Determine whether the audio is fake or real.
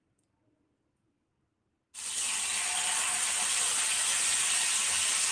real